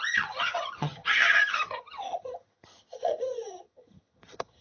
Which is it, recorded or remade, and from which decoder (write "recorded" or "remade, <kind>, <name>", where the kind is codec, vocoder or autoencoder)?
remade, vocoder, HiFi-GAN